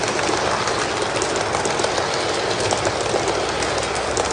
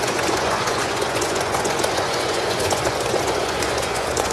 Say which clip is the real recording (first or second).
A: first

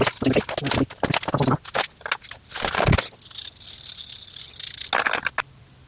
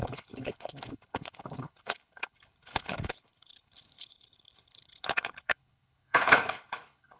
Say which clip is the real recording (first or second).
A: first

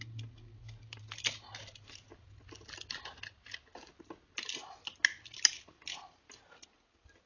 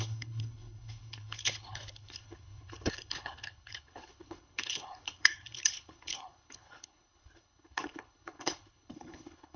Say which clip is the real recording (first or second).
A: first